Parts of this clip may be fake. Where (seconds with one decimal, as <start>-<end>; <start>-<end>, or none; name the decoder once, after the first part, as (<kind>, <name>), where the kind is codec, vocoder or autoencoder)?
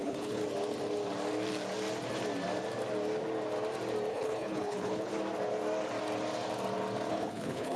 0.0-0.4 (codec, HILCodec); 4.1-5.1; 7.1-7.8